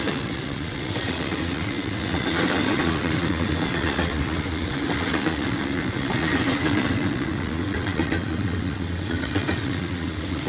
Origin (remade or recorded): remade